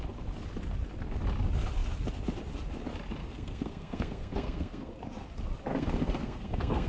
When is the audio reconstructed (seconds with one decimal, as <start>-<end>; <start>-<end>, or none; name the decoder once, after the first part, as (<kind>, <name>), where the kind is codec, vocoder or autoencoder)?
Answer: 3.2-4.9 (codec, SNAC); 5.7-6.9